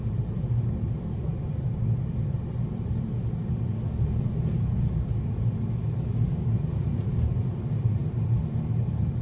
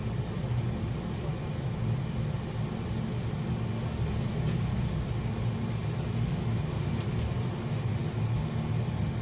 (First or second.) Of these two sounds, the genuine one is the second